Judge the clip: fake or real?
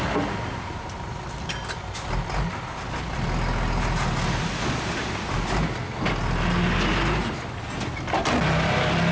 real